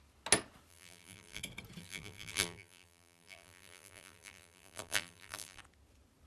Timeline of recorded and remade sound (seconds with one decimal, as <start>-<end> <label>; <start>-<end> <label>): 0.0-0.7 recorded; 0.7-1.4 remade; 1.4-1.8 recorded; 1.8-5.6 remade; 5.6-6.3 recorded